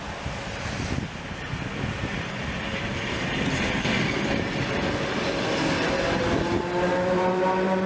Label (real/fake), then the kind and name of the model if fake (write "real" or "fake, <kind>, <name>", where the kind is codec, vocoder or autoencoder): real